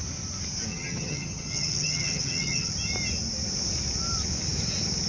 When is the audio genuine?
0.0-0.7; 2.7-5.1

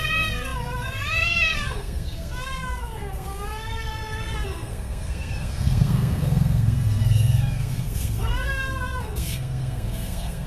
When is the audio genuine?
none

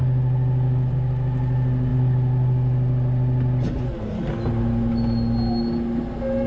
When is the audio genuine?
0.0-6.5

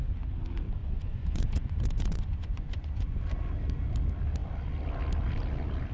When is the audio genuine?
0.0-0.8; 3.2-5.9

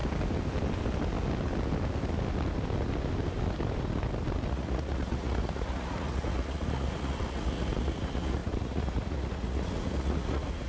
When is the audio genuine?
0.0-4.5